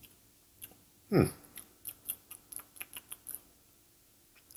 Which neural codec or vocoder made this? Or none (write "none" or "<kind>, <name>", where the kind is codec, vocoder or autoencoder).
none